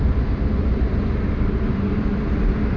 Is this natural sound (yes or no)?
yes